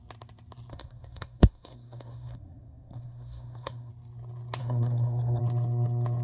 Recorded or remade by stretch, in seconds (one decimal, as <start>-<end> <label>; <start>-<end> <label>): 0.0-0.7 recorded; 0.7-3.9 remade; 3.9-4.6 recorded; 4.6-5.4 remade; 5.4-6.2 recorded